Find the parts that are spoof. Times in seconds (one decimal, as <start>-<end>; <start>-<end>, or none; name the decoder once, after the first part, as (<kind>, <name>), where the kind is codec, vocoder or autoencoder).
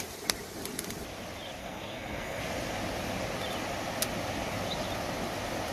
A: 1.6-2.4 (codec, SNAC)